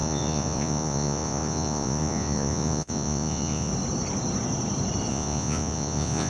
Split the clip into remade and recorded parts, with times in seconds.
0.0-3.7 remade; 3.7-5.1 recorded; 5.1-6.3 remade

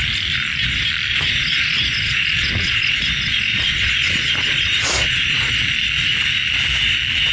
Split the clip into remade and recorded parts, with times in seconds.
0.0-1.1 recorded; 1.1-5.5 remade; 5.5-7.3 recorded

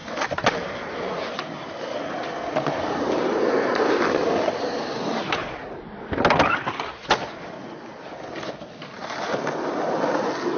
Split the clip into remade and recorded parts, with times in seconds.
0.0-10.6 recorded